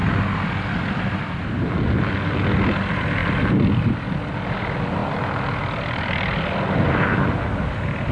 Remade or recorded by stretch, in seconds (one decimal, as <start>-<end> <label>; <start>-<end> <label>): 0.0-8.1 recorded

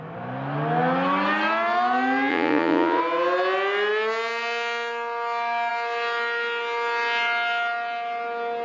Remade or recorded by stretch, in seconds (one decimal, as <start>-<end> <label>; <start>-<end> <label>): 0.0-2.3 recorded; 2.3-3.0 remade; 3.0-8.6 recorded

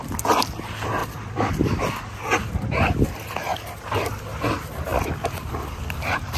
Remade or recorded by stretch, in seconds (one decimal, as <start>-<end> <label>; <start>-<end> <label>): 0.0-1.0 recorded; 1.0-1.5 remade; 1.5-3.5 recorded; 3.5-4.4 remade; 4.4-4.9 recorded; 4.9-6.4 remade

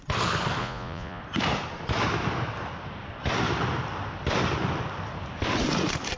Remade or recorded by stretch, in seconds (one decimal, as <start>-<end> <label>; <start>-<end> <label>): 0.0-0.6 recorded; 0.6-1.2 remade; 1.2-6.2 recorded

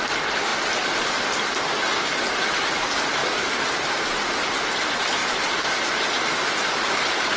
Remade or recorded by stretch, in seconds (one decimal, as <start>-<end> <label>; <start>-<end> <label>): 0.0-7.4 recorded

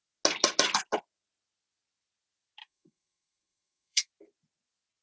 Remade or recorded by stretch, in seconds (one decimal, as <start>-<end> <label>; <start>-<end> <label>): 0.0-2.6 recorded; 2.6-4.1 remade; 4.1-5.0 recorded

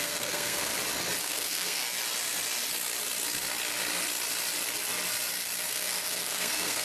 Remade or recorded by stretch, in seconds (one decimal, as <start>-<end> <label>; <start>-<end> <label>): 0.0-0.7 remade; 0.7-1.2 recorded; 1.2-1.8 remade; 1.8-5.7 recorded; 5.7-6.8 remade

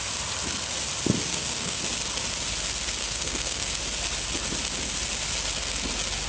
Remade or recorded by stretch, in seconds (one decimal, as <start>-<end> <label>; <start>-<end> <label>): 0.0-1.3 recorded; 1.3-1.8 remade; 1.8-3.0 recorded; 3.0-3.7 remade; 3.7-6.3 recorded